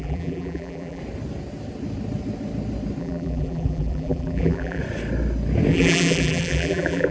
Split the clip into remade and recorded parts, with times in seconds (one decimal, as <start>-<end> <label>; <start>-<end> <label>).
0.0-1.0 remade; 1.0-3.0 recorded; 3.0-4.8 remade; 4.8-5.7 recorded; 5.7-7.1 remade